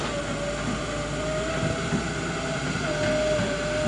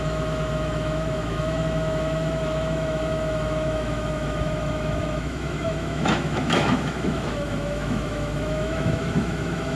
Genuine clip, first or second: first